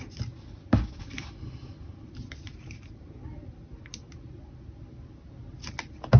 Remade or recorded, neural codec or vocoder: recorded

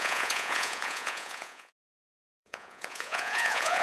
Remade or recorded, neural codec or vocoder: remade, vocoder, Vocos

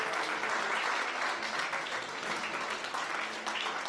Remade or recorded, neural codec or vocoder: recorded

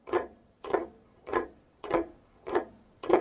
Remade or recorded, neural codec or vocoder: remade, vocoder, Vocos